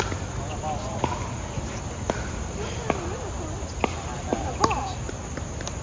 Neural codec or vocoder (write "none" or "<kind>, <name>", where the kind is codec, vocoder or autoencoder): none